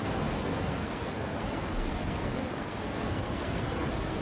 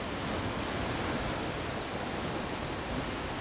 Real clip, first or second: second